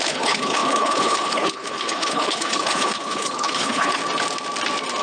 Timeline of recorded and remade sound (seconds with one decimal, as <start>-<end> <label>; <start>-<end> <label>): 0.0-4.0 remade; 4.0-5.0 recorded